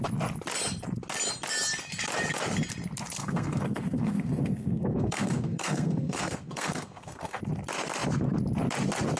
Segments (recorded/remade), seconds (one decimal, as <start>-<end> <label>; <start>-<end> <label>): 0.0-3.2 recorded; 3.2-7.4 remade; 7.4-9.2 recorded